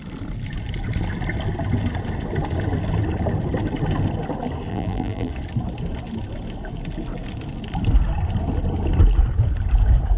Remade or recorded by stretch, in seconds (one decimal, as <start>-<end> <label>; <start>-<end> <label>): 0.0-4.7 recorded; 4.7-5.3 remade; 5.3-10.2 recorded